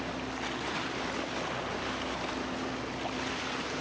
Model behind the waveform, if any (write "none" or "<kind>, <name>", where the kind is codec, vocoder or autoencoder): none